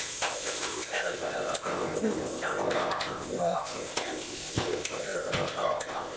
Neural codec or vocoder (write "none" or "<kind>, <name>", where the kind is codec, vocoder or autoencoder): codec, ZipCodec